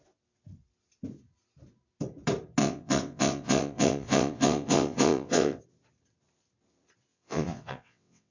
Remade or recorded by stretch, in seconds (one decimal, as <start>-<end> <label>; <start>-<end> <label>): 0.0-2.6 recorded; 2.6-5.6 remade; 5.6-7.1 recorded; 7.1-8.3 remade